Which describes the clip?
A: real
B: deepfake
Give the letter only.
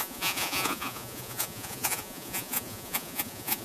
B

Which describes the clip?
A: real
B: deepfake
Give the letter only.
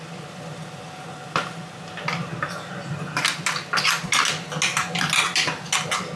A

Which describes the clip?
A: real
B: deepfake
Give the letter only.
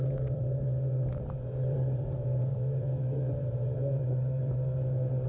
B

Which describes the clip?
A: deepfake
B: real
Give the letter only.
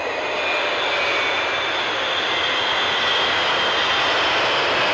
B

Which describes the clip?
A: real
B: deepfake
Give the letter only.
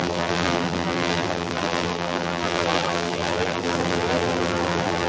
B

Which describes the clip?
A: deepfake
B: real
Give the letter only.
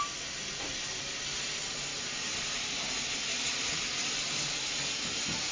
B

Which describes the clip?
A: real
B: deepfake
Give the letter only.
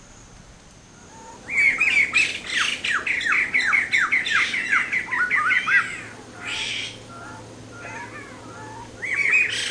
A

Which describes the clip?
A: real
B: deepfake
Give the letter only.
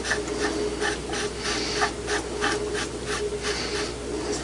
A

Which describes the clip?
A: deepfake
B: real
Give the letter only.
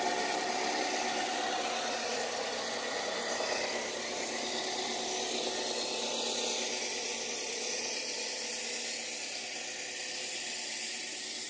B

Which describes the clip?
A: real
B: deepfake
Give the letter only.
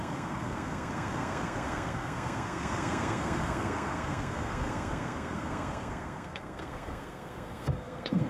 B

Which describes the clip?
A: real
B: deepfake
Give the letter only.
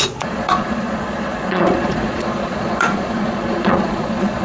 B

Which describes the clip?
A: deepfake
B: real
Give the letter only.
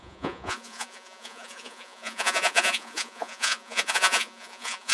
A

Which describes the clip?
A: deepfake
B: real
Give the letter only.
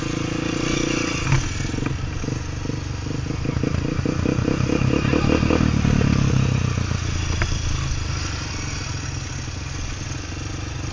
B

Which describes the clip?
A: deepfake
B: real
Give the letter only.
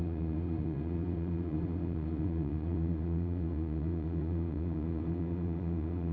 A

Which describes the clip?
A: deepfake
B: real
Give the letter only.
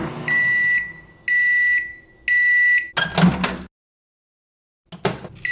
B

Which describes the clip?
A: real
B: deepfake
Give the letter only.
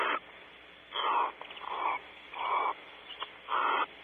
A